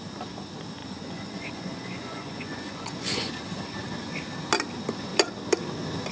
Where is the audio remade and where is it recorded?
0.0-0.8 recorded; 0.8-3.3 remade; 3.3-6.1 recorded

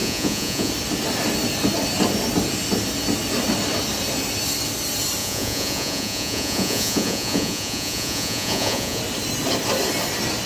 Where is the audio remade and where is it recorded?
0.0-0.7 remade; 0.7-5.2 recorded; 5.2-9.0 remade; 9.0-10.5 recorded

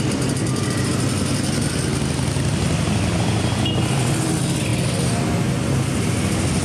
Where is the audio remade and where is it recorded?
0.0-6.6 recorded

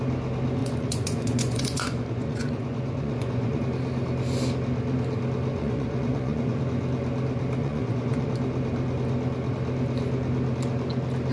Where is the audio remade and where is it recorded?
0.0-0.6 recorded; 0.6-3.6 remade; 3.6-5.5 recorded; 5.5-6.6 remade; 6.6-7.6 recorded; 7.6-8.3 remade; 8.3-11.3 recorded